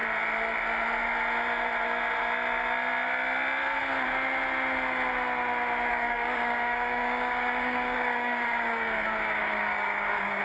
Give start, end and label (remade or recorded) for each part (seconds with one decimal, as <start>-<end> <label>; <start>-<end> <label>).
0.0-5.9 recorded; 5.9-10.4 remade

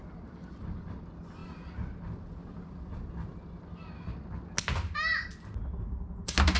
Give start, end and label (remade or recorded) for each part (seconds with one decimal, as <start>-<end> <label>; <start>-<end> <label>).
0.0-6.6 recorded

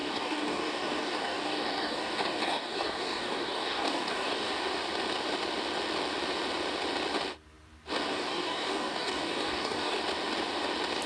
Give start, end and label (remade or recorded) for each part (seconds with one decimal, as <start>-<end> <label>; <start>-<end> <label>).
0.0-4.5 remade; 4.5-8.1 recorded; 8.1-10.0 remade; 10.0-11.1 recorded

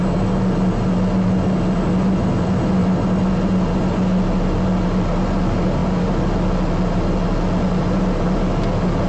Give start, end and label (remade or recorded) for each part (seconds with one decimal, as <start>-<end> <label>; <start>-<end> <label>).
0.0-9.1 recorded